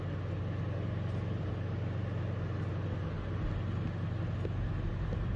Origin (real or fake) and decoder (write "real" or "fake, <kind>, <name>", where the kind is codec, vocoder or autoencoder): real